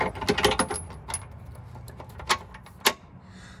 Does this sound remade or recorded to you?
recorded